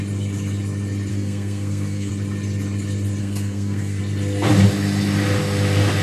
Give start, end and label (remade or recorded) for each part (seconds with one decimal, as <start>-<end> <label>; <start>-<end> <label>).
0.0-1.1 recorded; 1.1-2.1 remade; 2.1-3.2 recorded; 3.2-4.0 remade; 4.0-6.0 recorded